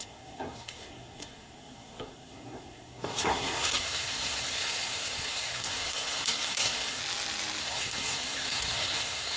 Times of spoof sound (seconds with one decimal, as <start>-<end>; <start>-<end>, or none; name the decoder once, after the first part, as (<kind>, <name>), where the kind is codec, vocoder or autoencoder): 0.0-7.0 (codec, SNAC); 7.6-9.4